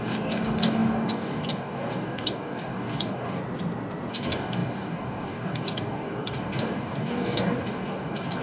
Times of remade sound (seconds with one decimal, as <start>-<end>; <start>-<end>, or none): 0.0-3.4; 4.1-8.4